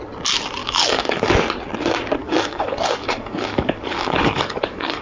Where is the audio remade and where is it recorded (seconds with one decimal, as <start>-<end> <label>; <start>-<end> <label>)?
0.0-0.6 recorded; 0.6-1.3 remade; 1.3-2.2 recorded; 2.2-5.0 remade